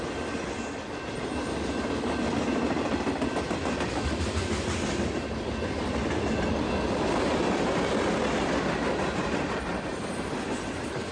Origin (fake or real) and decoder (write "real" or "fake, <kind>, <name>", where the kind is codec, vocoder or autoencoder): real